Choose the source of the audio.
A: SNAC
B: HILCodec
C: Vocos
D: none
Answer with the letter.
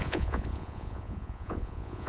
C